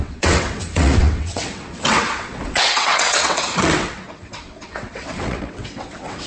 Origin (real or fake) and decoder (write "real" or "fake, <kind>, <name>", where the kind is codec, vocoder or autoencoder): fake, vocoder, WaveNeXt